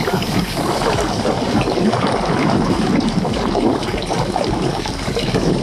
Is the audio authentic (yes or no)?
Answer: no